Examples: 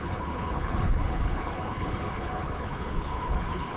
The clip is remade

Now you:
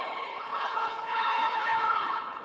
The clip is remade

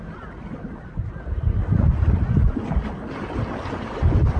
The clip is recorded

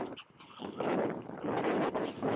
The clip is remade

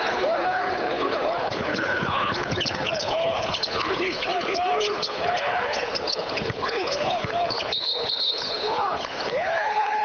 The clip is remade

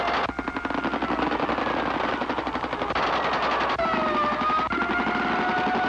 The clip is recorded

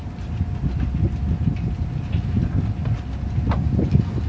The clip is recorded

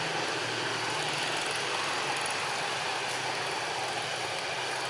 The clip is recorded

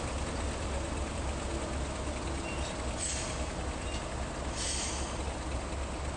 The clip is recorded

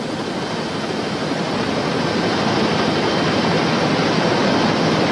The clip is recorded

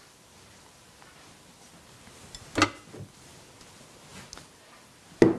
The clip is recorded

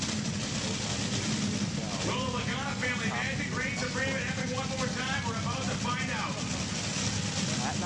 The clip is recorded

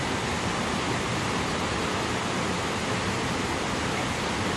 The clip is recorded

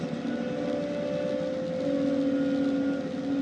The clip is recorded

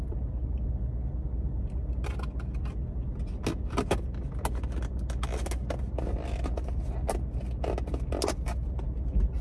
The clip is recorded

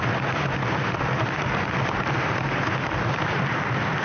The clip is recorded